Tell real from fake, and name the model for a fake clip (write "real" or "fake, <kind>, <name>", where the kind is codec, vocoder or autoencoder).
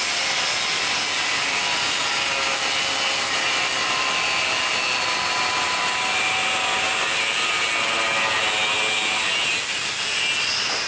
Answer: real